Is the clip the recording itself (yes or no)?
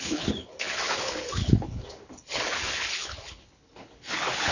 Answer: no